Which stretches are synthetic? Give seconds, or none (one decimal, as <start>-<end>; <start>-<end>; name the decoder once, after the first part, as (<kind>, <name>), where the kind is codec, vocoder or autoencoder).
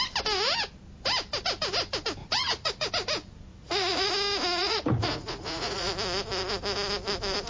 2.2-2.9 (vocoder, Vocos); 3.5-4.1; 4.6-5.9